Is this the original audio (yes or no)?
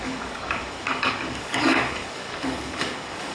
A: no